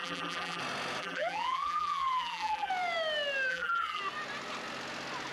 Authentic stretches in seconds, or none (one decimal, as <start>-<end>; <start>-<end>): 0.6-1.0; 2.7-3.5; 4.0-5.3